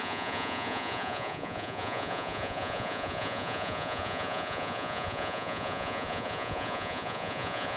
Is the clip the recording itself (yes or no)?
no